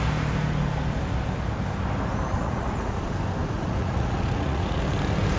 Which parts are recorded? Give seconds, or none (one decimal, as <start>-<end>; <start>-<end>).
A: 0.0-2.3; 3.0-3.4; 4.8-5.4